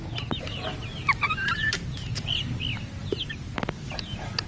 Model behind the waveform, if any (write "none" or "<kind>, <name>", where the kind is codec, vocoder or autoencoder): none